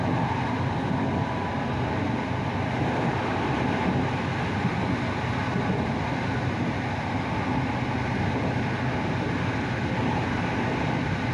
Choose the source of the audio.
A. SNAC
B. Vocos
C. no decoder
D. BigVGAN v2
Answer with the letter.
C